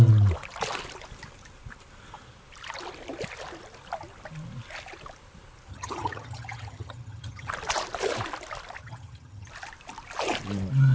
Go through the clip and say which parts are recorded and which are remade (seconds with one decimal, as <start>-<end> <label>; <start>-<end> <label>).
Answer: 0.0-5.7 recorded; 5.7-7.5 remade; 7.5-8.8 recorded; 8.8-9.5 remade; 9.5-10.9 recorded